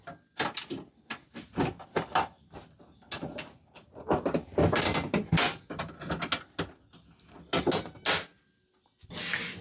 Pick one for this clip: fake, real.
real